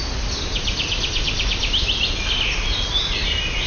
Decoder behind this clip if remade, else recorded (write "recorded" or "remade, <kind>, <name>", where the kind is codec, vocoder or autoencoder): recorded